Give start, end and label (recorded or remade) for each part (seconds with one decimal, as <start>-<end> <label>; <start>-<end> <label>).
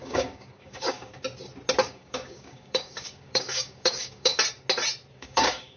0.0-1.1 remade; 1.1-1.8 recorded; 1.8-4.3 remade; 4.3-5.1 recorded; 5.1-5.8 remade